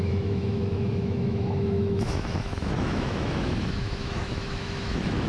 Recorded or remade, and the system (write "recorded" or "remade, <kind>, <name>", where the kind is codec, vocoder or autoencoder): remade, autoencoder, DAC-VAE